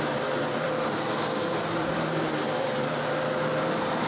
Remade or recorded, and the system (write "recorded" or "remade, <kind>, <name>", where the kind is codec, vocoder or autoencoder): remade, vocoder, BigVGAN v2